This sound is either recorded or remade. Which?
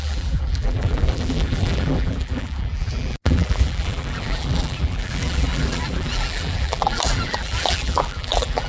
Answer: remade